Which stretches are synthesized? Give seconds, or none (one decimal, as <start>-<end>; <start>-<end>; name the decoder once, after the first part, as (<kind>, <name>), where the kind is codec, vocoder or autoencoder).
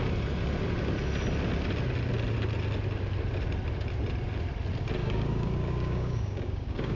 5.0-7.0 (codec, DAC)